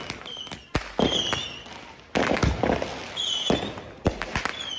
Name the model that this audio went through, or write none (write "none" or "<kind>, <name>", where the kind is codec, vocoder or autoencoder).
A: none